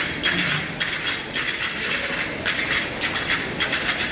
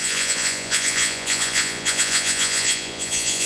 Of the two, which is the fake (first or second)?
second